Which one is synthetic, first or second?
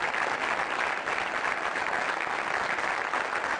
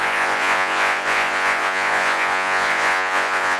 second